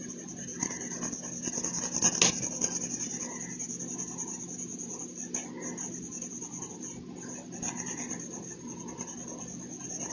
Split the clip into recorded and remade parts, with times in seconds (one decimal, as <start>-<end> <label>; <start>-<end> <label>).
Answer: 0.0-10.1 recorded